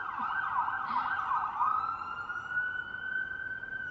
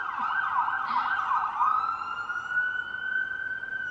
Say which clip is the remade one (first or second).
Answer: first